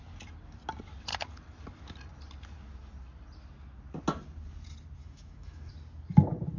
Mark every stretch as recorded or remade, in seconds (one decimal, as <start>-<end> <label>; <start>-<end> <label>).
0.0-5.0 recorded; 5.0-5.7 remade; 5.7-6.6 recorded